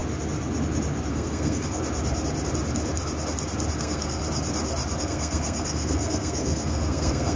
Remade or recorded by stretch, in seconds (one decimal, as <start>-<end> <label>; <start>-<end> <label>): 0.0-1.1 recorded; 1.1-1.8 remade; 1.8-3.8 recorded; 3.8-4.2 remade; 4.2-5.0 recorded; 5.0-7.4 remade